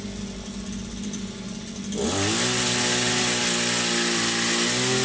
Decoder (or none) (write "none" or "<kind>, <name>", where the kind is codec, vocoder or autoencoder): none